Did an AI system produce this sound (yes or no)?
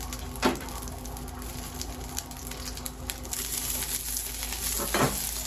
no